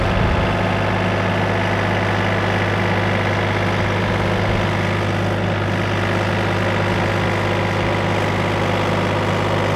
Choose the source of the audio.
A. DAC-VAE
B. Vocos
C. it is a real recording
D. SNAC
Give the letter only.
C